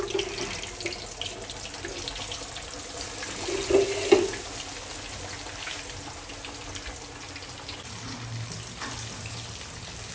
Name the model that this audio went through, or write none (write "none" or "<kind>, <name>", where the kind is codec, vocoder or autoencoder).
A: none